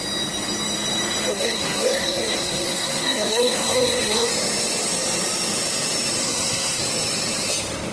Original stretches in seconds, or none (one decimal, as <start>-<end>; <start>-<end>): 0.0-1.3; 4.3-6.2; 6.8-7.9